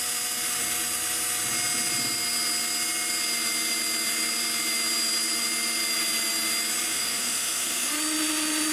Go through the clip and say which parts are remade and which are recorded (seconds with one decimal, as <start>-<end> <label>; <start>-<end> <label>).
0.0-6.9 recorded; 6.9-7.9 remade; 7.9-8.7 recorded